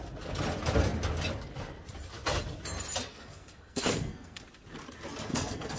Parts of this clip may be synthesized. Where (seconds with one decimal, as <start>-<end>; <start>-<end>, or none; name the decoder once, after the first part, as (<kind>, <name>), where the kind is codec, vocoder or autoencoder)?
3.1-4.4 (codec, SNAC); 5.3-5.8